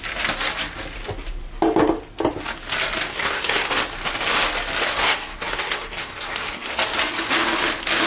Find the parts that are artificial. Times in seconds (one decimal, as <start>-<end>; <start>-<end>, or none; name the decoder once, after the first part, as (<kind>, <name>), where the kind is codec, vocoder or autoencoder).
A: 3.1-3.7 (codec, SNAC); 4.9-6.7